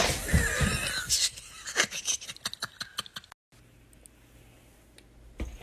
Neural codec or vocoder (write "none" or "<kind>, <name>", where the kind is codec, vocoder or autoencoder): none